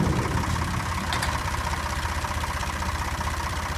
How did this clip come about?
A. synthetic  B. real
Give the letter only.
A